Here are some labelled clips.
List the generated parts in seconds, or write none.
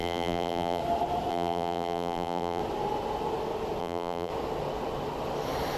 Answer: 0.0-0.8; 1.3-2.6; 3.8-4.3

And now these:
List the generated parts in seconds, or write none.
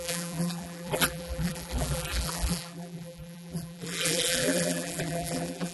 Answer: 0.0-5.7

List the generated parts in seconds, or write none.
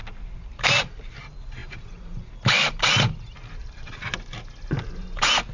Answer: 1.6-2.3; 3.6-4.2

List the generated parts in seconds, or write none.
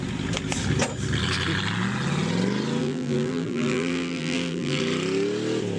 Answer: 2.8-4.8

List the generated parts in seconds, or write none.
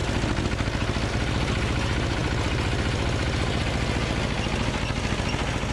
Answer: none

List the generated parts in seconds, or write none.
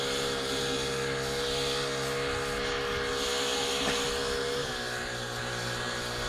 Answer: none